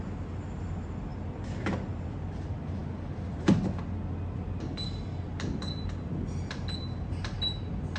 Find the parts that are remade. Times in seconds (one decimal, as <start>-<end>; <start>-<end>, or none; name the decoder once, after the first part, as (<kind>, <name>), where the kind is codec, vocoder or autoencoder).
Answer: none